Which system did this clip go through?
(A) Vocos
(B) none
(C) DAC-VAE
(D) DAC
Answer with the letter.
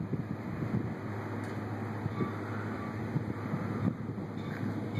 B